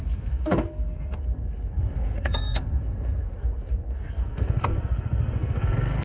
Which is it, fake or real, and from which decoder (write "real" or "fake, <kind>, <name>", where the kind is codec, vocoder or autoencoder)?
fake, codec, SNAC